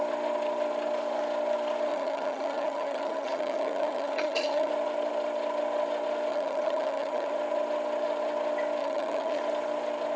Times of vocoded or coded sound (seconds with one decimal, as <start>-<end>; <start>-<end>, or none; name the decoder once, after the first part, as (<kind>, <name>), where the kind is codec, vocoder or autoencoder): 1.9-4.7 (vocoder, HiFi-GAN); 6.3-7.3; 8.8-9.4